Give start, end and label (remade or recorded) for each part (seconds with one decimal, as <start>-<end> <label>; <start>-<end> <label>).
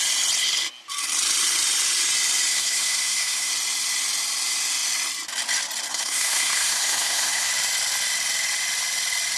0.0-2.5 recorded; 2.5-3.5 remade; 3.5-5.9 recorded; 5.9-7.5 remade; 7.5-9.4 recorded